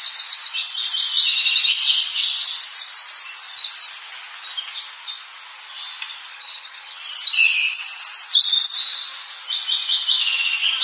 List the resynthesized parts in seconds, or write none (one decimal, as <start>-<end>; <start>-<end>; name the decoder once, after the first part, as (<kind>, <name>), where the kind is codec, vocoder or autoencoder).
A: 6.3-7.0 (vocoder, HiFi-GAN)